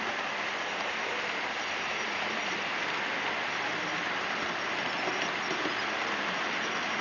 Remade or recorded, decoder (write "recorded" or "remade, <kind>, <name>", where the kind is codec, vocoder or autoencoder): recorded